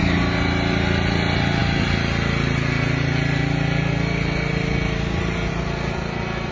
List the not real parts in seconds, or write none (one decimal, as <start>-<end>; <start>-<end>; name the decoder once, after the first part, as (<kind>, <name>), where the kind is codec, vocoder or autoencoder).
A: none